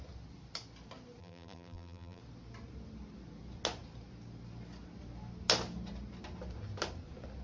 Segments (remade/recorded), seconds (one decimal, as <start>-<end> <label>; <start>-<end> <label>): 0.0-1.2 recorded; 1.2-2.2 remade; 2.2-7.4 recorded